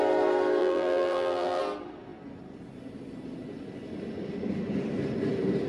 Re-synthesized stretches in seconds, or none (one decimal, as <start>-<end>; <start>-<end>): 0.6-1.6